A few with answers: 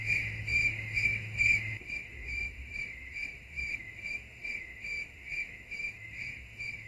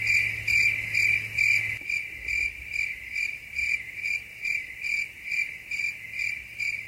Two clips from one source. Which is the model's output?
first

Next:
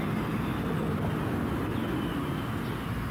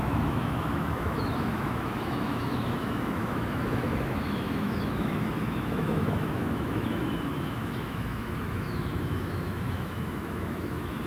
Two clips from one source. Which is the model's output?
second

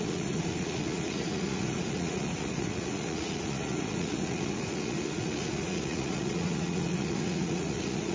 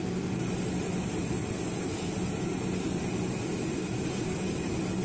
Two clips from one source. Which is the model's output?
first